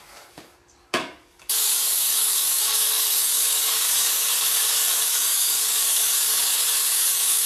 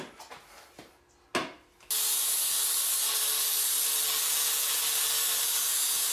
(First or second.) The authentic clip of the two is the second